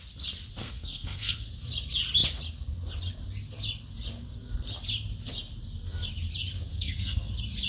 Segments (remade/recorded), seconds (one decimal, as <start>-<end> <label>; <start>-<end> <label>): 0.0-0.6 recorded; 0.6-1.5 remade; 1.5-6.7 recorded; 6.7-7.3 remade; 7.3-7.7 recorded